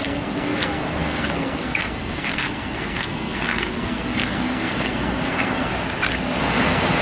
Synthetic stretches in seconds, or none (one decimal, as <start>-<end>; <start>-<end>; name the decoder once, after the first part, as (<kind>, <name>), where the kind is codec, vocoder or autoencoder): 0.0-5.7 (codec, SNAC); 6.4-7.0

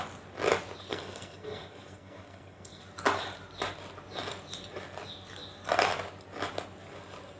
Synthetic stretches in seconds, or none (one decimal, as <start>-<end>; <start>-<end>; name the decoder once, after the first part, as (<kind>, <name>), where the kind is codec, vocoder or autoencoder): 0.9-2.8 (codec, SNAC)

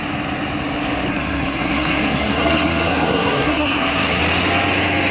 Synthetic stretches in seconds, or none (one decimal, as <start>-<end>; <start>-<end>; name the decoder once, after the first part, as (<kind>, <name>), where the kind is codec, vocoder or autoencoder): 1.1-4.2 (codec, SNAC)

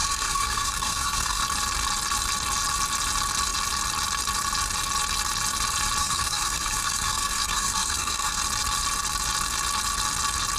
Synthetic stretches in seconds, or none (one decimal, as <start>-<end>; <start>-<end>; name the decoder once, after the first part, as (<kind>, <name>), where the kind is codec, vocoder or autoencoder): 0.0-1.4 (codec, SNAC); 6.0-8.4

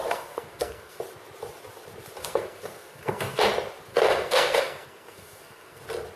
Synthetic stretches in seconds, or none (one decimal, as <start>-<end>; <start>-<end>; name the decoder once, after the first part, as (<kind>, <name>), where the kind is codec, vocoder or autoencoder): 0.0-1.0 (codec, SNAC); 2.2-3.4; 3.9-5.8

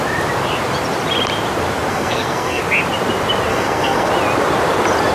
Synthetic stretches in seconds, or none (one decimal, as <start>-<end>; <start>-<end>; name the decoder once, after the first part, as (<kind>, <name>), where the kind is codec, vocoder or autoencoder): 1.9-2.6 (codec, SNAC); 3.5-4.1